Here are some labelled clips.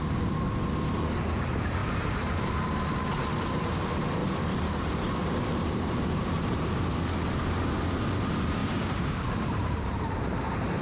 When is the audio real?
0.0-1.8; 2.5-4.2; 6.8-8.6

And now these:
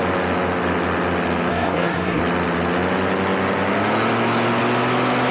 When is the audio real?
0.0-1.5; 2.2-5.3

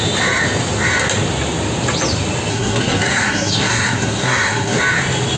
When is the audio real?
0.0-2.5; 4.8-5.4

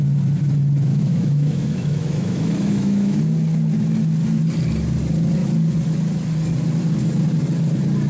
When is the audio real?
0.0-0.9; 3.2-8.1

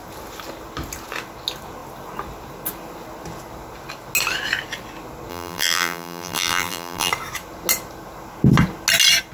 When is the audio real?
0.0-5.3; 7.1-9.3

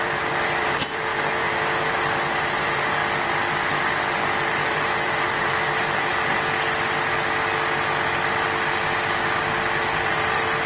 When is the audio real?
3.0-4.4; 6.1-9.8

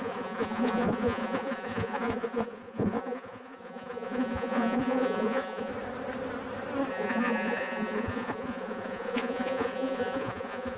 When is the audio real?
5.7-6.9

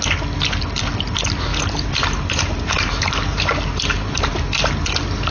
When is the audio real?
0.0-1.5; 4.7-5.3